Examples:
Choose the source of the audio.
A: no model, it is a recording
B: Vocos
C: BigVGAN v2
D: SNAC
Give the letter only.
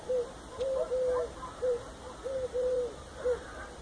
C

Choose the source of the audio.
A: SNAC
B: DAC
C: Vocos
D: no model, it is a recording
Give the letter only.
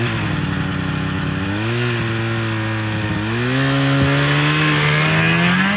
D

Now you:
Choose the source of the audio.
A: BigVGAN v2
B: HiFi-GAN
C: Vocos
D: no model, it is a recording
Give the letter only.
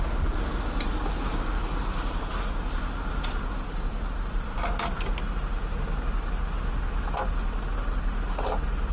D